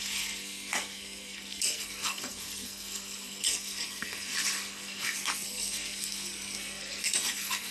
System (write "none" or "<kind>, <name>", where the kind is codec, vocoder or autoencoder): codec, SNAC